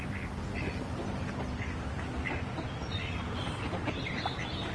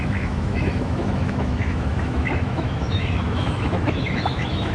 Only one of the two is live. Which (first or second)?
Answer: first